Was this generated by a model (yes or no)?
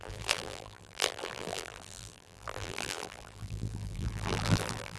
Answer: yes